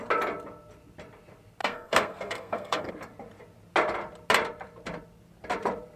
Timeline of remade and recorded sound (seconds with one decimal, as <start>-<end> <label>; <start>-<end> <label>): 0.0-1.6 recorded; 1.6-2.9 remade; 2.9-6.0 recorded